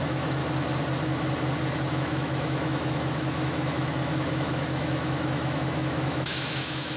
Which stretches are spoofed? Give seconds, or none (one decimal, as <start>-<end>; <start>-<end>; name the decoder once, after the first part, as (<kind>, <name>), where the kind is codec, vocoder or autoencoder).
0.0-0.4 (autoencoder, DAC-VAE); 1.9-7.0

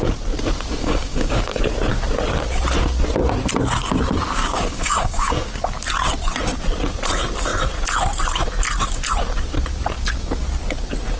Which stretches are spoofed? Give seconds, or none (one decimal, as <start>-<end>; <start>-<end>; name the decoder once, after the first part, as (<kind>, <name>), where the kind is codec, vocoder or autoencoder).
0.8-1.6 (codec, DAC); 4.4-5.6